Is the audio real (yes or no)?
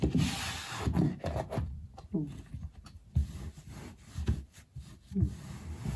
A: yes